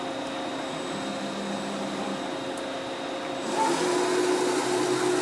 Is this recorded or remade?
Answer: recorded